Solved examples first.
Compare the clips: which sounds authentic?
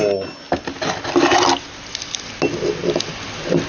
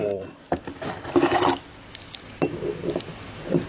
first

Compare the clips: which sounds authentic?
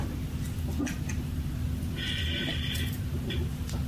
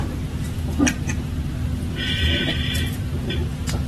second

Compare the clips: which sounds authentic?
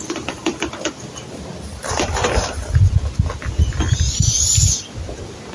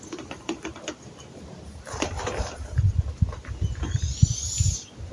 first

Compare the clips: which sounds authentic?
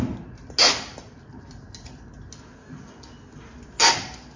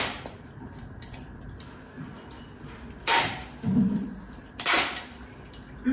first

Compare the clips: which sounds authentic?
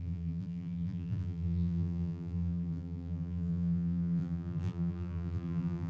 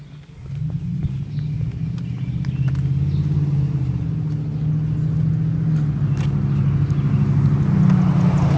second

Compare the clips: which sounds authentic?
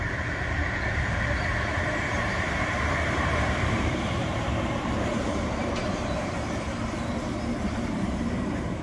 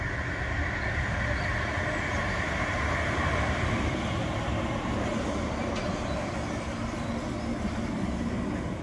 second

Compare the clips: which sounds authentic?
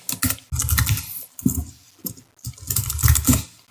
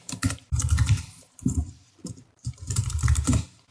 first